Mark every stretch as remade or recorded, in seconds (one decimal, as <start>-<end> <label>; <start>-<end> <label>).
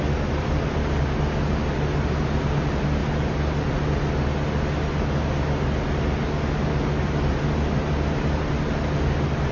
0.0-9.5 recorded